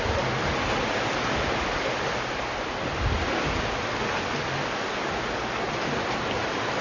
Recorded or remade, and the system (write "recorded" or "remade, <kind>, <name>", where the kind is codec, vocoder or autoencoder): recorded